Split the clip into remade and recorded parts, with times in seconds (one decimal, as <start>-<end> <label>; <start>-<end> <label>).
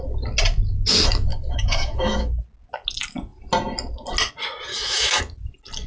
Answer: 0.0-1.3 recorded; 1.3-2.4 remade; 2.4-4.7 recorded; 4.7-5.2 remade; 5.2-5.9 recorded